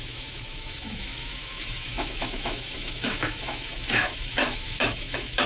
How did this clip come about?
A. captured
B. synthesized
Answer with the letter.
B